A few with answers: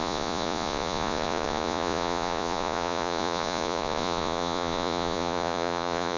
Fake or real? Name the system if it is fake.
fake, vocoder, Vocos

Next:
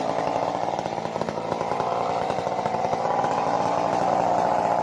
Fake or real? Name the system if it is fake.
fake, vocoder, BigVGAN v2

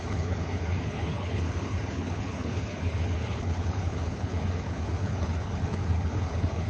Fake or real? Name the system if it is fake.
fake, codec, HILCodec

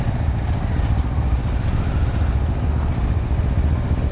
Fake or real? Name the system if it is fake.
real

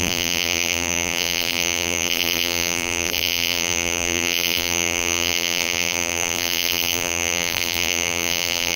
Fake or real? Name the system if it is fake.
fake, vocoder, BigVGAN v2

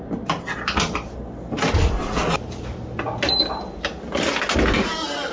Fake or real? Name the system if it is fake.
real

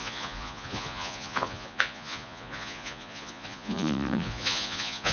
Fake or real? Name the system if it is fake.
fake, vocoder, Vocos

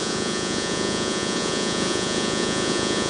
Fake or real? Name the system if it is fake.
fake, vocoder, Vocos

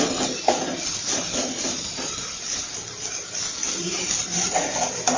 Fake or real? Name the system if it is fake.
real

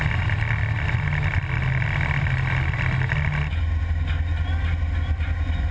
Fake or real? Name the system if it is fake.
real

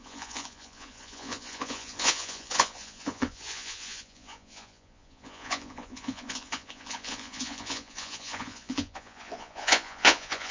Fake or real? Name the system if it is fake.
fake, vocoder, Vocos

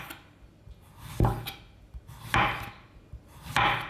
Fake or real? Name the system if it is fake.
real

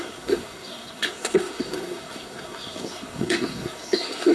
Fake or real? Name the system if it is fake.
fake, codec, SNAC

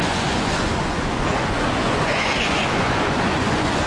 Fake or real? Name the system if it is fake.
fake, vocoder, Vocos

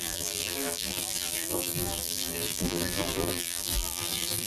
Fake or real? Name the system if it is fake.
fake, vocoder, BigVGAN v2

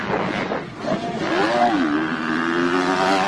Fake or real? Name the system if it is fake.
real